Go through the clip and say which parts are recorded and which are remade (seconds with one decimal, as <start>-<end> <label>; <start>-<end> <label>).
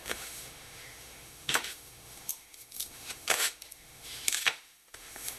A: 0.0-5.4 remade